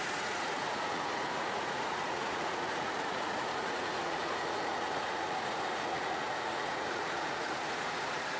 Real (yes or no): no